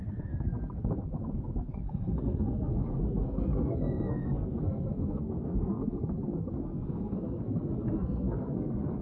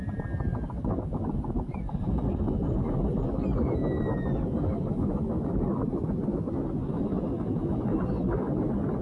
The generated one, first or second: first